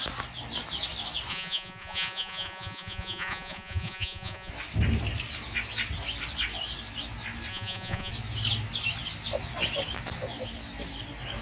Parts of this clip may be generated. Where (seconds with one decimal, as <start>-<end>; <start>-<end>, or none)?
1.3-4.5; 7.5-8.1